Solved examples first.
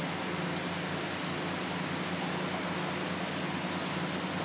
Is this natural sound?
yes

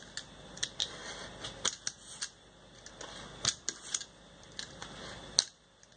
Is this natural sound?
yes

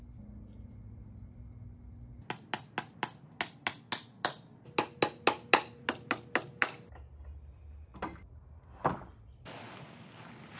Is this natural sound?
yes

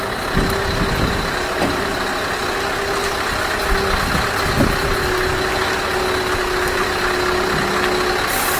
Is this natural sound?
yes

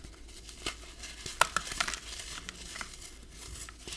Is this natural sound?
yes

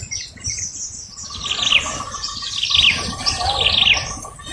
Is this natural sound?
yes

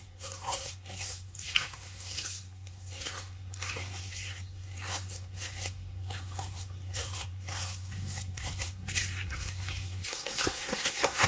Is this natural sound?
no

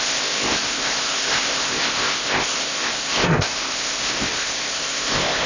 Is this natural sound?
no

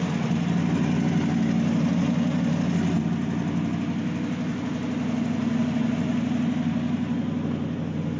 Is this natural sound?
yes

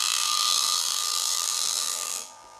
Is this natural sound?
no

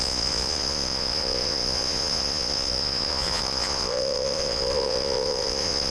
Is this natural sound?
no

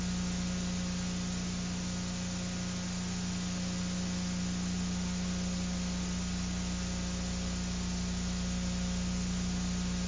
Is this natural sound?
yes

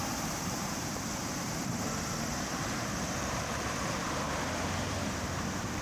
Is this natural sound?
no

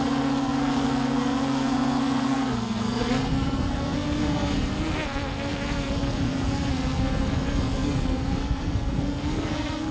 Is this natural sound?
no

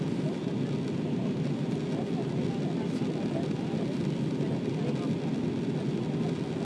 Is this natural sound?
yes